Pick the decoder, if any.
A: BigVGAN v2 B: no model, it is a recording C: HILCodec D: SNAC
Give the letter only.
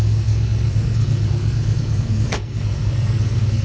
D